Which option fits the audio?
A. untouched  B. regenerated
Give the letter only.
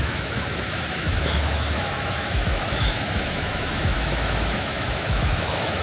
B